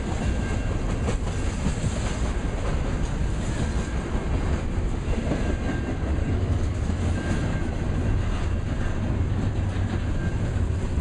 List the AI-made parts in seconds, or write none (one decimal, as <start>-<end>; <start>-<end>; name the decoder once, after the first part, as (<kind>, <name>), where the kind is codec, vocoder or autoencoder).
6.2-7.1 (codec, DAC)